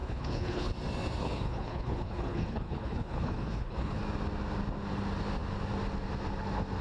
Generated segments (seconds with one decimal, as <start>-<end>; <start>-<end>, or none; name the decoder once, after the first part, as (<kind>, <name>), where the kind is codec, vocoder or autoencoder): 0.0-0.7 (codec, HILCodec); 1.2-4.0